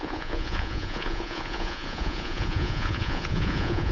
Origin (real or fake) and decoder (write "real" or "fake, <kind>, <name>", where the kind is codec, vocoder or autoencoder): fake, vocoder, Vocos